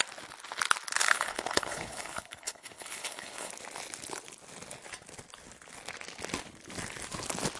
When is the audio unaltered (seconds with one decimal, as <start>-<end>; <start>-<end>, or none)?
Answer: 0.0-1.0; 3.5-7.6